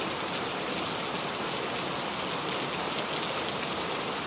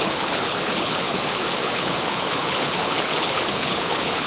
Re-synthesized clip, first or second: second